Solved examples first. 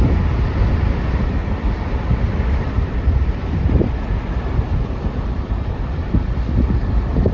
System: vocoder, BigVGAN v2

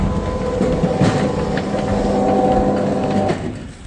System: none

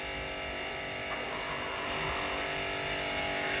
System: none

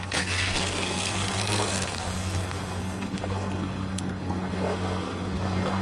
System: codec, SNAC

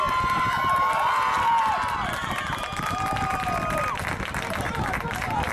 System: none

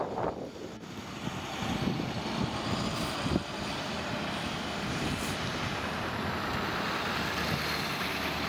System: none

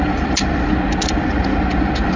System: none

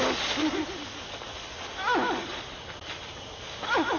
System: none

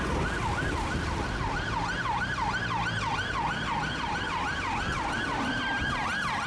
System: none